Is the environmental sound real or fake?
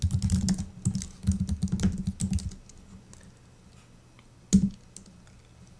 real